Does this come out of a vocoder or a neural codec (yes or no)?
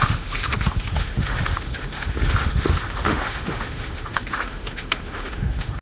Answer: yes